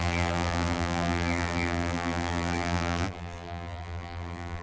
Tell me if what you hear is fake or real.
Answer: fake